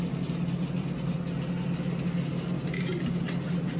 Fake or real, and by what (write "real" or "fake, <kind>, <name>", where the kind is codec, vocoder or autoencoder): real